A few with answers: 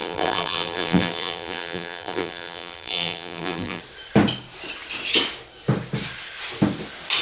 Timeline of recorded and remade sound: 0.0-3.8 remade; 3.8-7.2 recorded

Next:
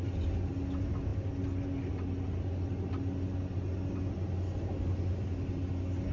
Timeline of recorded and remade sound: 0.0-6.1 recorded

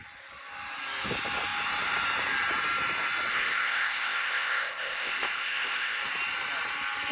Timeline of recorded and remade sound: 0.0-3.3 recorded; 3.3-6.0 remade; 6.0-7.1 recorded

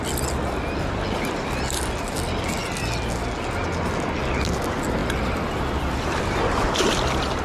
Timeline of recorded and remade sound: 0.0-7.4 recorded